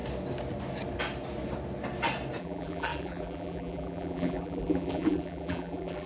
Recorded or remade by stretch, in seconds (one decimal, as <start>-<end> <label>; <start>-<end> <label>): 0.0-2.4 recorded; 2.4-6.1 remade